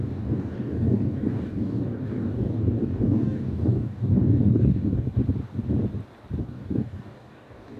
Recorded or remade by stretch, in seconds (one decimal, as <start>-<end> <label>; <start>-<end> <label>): 0.0-5.2 remade; 5.2-6.4 recorded; 6.4-7.8 remade